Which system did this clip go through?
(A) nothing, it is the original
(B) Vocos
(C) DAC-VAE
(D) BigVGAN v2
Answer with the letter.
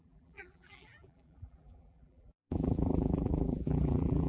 D